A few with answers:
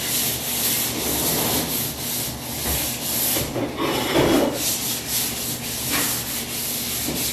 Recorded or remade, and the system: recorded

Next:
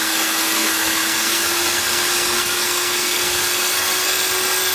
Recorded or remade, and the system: remade, codec, SNAC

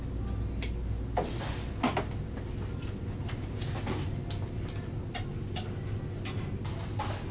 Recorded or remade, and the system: recorded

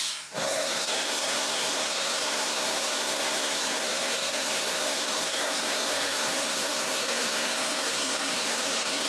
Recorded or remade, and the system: remade, codec, SNAC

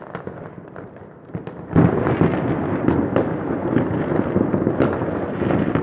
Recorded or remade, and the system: recorded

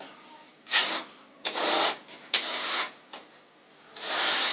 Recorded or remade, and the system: recorded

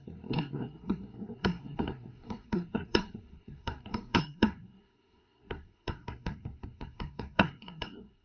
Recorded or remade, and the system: remade, codec, SNAC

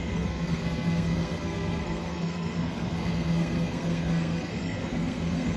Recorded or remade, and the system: remade, codec, SNAC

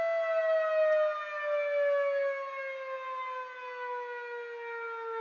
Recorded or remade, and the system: recorded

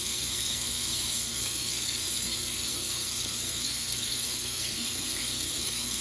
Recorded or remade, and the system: remade, codec, SNAC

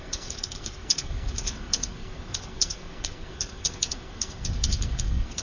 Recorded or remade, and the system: remade, codec, SNAC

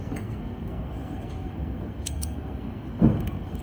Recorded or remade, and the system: remade, codec, SNAC